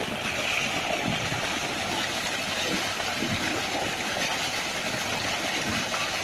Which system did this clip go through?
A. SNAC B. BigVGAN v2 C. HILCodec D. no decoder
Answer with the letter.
D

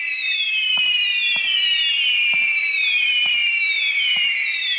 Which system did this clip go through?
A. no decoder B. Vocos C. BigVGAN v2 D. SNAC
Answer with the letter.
C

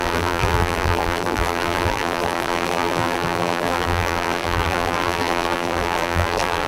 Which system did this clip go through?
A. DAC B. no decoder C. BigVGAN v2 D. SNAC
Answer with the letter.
C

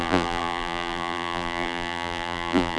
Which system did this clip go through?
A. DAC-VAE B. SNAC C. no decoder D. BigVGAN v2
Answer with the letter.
D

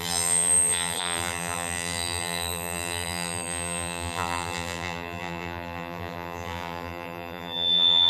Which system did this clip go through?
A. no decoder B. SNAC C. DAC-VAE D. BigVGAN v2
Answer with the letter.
D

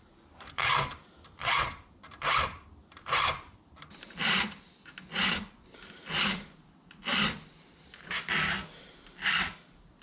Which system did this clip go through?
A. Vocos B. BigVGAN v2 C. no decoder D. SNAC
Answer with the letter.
B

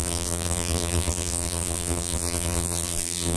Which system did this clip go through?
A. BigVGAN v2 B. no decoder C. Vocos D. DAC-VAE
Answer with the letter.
A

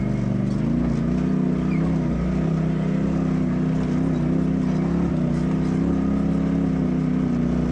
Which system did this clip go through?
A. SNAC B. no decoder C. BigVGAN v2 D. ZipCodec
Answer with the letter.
B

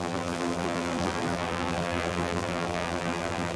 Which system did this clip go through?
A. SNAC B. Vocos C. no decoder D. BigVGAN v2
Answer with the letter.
D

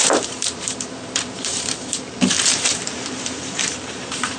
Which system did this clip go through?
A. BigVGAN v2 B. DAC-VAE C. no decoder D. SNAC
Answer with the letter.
A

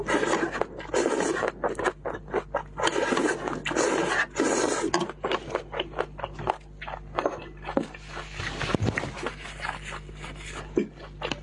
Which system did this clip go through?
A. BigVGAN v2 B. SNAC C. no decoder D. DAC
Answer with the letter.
C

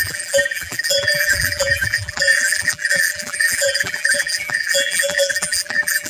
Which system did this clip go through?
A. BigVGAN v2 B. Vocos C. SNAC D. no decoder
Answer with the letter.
A